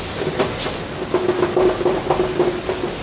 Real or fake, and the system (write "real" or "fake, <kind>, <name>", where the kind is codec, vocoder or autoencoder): real